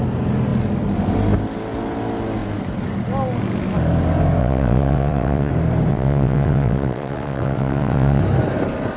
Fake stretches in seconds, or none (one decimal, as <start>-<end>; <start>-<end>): 4.4-5.5; 5.9-8.2